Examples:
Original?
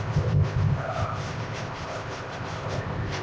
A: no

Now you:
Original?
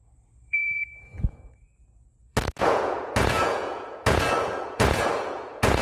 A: no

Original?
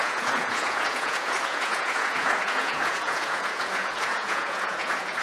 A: no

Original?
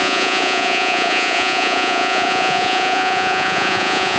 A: no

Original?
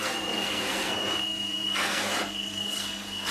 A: no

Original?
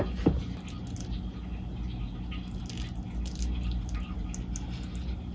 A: yes